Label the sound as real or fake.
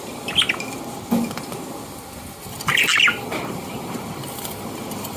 real